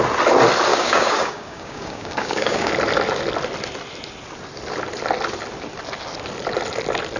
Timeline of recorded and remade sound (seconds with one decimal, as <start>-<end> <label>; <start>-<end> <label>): 0.0-0.7 recorded; 0.7-2.7 remade; 2.7-7.2 recorded